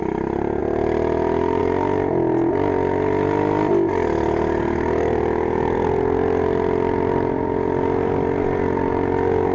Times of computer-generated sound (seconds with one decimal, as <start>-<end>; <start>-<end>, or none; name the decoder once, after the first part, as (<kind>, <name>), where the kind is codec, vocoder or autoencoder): none